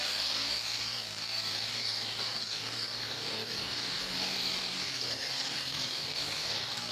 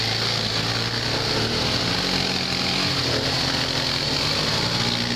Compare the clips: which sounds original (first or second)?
second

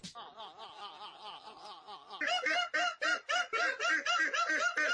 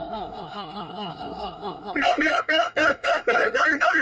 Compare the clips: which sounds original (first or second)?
first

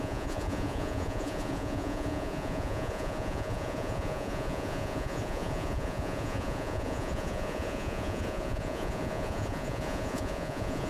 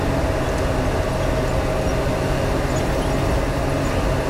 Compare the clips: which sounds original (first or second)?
second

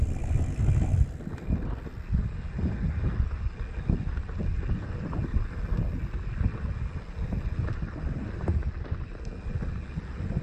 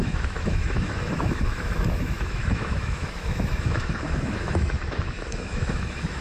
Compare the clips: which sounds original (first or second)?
first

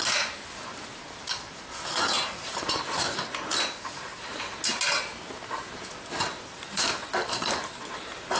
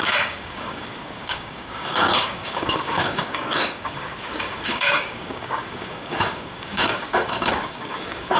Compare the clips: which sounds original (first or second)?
first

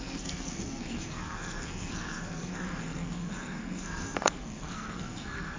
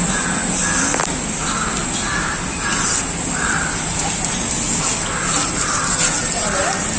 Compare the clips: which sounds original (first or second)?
second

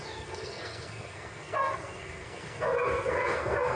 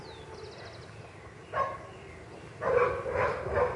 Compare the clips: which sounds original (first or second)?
second